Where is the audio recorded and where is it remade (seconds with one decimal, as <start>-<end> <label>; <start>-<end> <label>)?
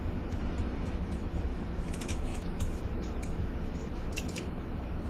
0.0-5.1 remade